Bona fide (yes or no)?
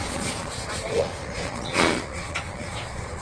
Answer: no